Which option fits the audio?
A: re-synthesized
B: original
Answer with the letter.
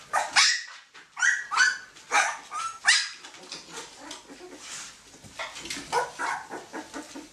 B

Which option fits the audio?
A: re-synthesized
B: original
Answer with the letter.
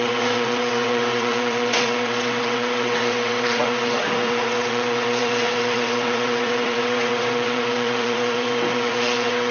A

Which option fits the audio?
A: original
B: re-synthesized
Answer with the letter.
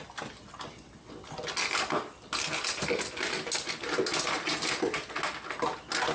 A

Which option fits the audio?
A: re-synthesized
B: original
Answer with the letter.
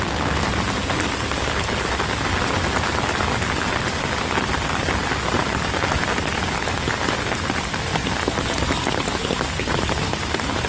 B